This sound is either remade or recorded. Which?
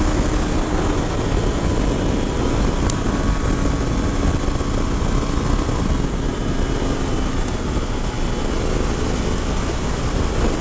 recorded